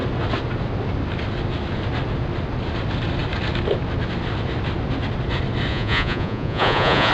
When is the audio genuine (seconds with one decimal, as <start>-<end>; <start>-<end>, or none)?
0.0-5.7